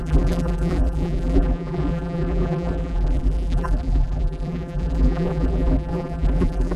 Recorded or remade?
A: remade